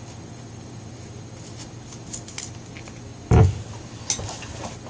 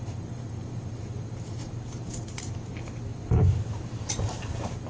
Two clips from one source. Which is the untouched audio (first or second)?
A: first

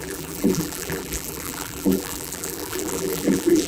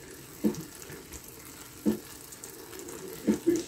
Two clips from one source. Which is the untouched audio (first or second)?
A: second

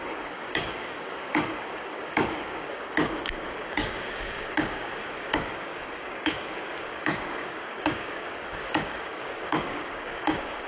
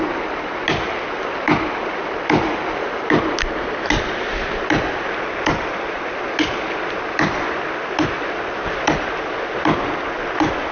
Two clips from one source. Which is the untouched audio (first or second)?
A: second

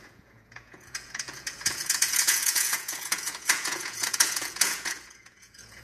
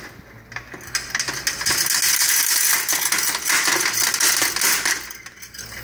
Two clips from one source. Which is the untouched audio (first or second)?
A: second